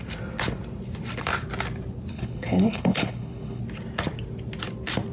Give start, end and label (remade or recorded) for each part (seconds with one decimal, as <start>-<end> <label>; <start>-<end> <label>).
0.0-2.1 recorded; 2.1-3.6 remade; 3.6-5.1 recorded